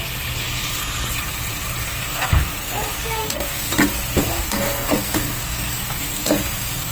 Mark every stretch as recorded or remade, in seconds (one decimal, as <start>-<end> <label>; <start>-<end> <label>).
0.0-1.9 recorded; 1.9-3.7 remade; 3.7-4.2 recorded; 4.2-6.9 remade